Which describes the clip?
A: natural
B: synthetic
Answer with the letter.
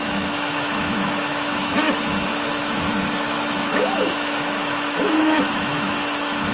B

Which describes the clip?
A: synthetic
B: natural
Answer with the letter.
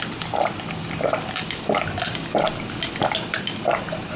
B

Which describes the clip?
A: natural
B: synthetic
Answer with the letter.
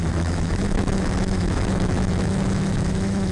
B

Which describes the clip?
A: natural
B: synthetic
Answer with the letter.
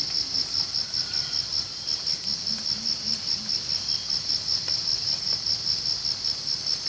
A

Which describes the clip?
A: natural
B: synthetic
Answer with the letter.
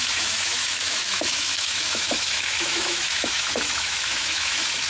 B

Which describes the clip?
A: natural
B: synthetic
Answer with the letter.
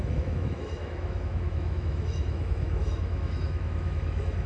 B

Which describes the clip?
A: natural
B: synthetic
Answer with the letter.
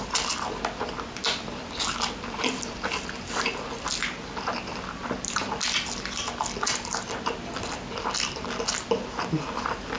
A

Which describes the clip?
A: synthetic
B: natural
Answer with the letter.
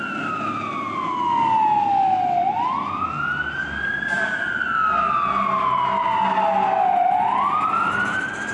B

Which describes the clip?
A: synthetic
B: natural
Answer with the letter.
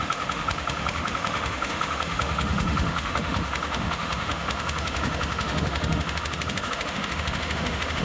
A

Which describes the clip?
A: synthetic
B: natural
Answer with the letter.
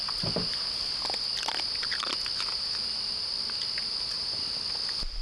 B